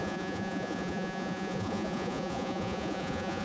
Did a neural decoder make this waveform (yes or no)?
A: yes